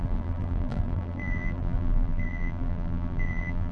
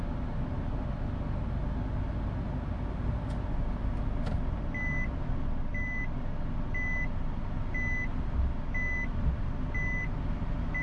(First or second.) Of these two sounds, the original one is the second